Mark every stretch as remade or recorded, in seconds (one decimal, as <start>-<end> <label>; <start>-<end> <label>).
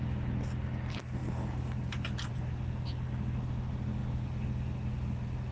0.0-5.5 recorded